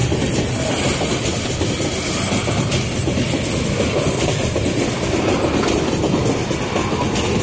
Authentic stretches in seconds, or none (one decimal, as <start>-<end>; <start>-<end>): 0.0-7.4